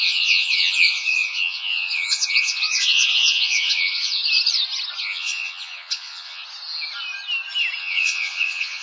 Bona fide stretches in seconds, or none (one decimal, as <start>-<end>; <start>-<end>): 4.2-5.0; 6.4-7.8